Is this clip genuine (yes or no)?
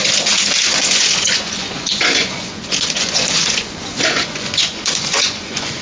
no